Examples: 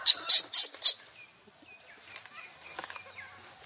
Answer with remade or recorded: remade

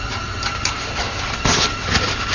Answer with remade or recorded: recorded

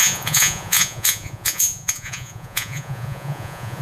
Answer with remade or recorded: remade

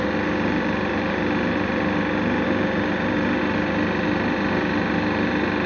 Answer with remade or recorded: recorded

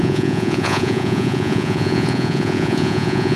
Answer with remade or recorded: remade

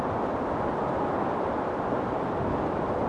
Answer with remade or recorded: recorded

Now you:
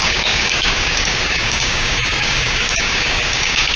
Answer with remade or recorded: remade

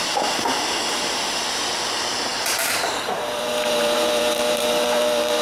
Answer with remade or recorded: remade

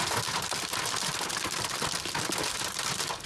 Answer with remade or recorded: recorded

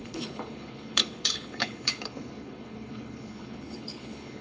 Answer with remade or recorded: remade